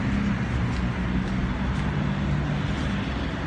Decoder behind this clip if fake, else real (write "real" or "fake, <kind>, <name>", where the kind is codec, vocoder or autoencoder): real